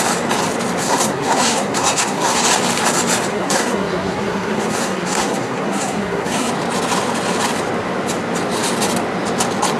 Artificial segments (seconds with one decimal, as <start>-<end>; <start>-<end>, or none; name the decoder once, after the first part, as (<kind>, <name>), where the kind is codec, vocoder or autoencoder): 0.8-2.4 (codec, SNAC); 3.3-6.5